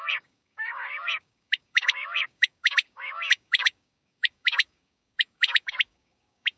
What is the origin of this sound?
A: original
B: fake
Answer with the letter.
B